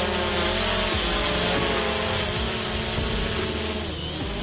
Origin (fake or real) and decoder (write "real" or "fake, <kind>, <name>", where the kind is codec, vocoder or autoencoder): real